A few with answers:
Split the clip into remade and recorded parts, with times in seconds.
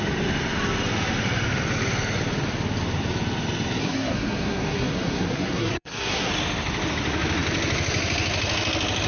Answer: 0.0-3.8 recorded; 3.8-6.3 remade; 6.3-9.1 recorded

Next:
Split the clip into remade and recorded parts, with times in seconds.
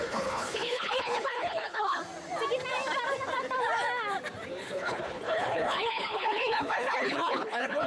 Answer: 0.0-2.0 remade; 2.0-4.6 recorded; 4.6-7.9 remade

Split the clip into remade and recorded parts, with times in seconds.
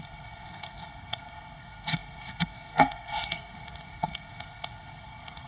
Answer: 0.0-5.5 remade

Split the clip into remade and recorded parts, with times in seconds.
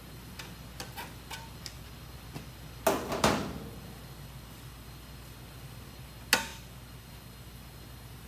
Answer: 0.0-8.3 recorded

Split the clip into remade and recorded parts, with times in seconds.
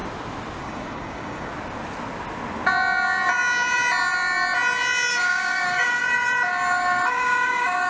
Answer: 0.0-0.6 recorded; 0.6-1.5 remade; 1.5-5.1 recorded; 5.1-6.0 remade; 6.0-7.1 recorded; 7.1-7.9 remade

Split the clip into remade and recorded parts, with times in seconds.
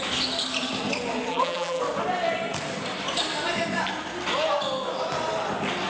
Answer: 0.0-1.3 recorded; 1.3-1.8 remade; 1.8-5.9 recorded